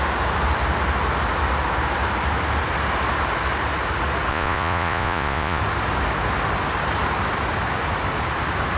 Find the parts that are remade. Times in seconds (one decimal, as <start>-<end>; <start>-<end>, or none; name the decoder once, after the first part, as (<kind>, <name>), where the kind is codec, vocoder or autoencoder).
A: 4.3-5.6 (vocoder, Vocos)